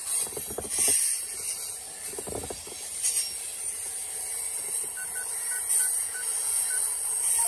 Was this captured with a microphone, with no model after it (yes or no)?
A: yes